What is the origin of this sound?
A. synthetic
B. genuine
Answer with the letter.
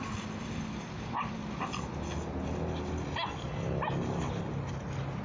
B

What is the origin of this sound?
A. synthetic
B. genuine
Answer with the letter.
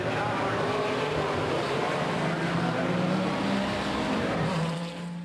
A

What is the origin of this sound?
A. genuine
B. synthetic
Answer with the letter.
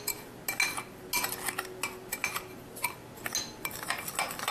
A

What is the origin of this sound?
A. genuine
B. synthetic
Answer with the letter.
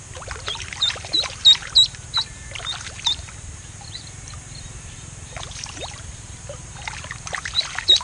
B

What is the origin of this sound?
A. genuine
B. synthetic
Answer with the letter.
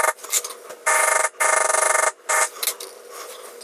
A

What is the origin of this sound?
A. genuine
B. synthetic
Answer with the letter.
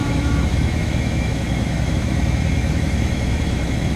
B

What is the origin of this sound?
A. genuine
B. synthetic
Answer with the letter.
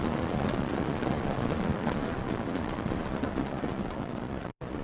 B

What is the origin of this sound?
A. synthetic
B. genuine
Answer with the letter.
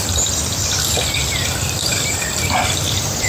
A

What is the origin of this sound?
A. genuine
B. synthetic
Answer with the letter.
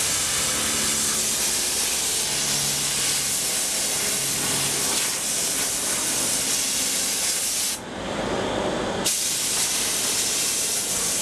A